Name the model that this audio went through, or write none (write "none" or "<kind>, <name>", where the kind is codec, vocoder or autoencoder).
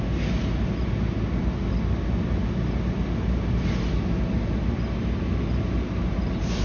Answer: none